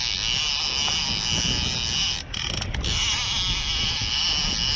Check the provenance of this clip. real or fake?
real